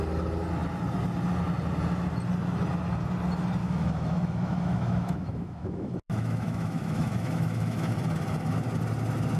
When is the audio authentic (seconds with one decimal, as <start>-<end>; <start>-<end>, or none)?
0.0-3.6; 7.9-9.4